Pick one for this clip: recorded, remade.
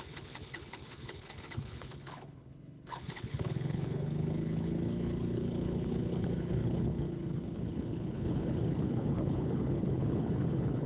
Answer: remade